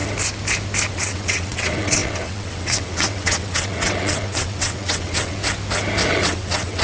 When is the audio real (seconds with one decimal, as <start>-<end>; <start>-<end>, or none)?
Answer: 0.0-0.9; 5.4-6.1